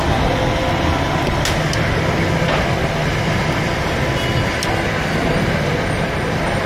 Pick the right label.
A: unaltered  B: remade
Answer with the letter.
A